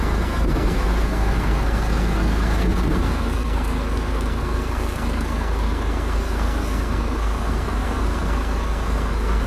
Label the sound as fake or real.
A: fake